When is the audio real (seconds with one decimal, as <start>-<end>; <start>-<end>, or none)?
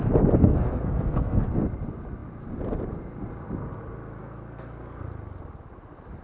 0.0-0.4; 1.4-4.2; 5.1-6.2